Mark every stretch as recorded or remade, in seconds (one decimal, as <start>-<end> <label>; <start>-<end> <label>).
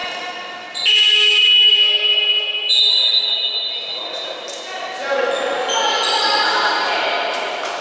0.0-7.8 recorded